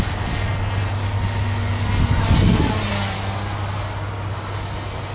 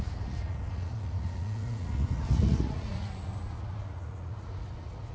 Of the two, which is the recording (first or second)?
first